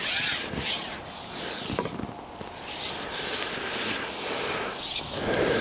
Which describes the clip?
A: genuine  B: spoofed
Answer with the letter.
A